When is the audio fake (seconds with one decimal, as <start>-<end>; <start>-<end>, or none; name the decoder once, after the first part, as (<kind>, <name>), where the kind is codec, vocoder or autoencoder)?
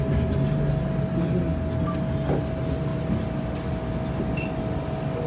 none